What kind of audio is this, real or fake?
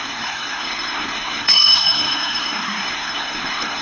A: fake